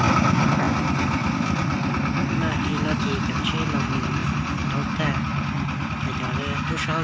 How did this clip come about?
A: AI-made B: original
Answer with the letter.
B